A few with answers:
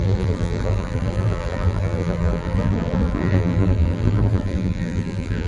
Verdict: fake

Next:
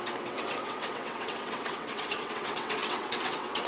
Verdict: fake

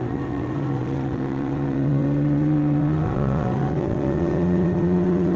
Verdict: fake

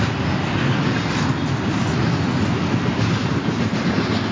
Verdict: real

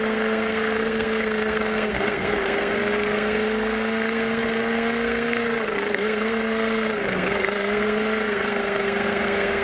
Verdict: fake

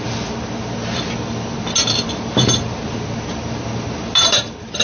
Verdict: real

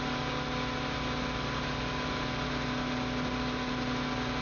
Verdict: real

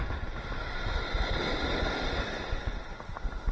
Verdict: real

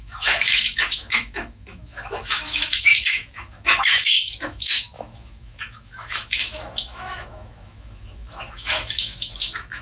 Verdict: fake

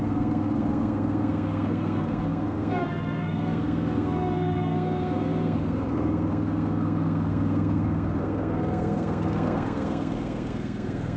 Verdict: fake